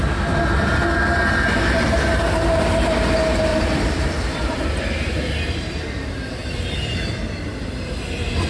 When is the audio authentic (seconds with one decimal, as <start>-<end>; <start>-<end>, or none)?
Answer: 0.0-3.5; 5.8-8.5